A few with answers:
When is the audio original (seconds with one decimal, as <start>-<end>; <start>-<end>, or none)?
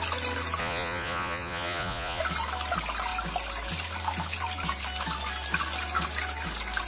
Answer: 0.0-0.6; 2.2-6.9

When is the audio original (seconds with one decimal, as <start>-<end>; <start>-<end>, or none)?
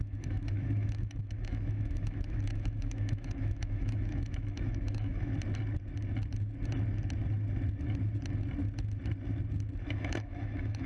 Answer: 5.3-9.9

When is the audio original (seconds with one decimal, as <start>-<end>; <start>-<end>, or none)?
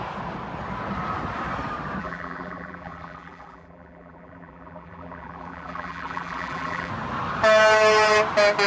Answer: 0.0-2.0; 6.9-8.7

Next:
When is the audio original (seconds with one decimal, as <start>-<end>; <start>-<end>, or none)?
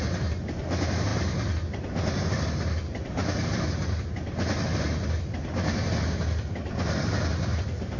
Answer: 0.0-8.0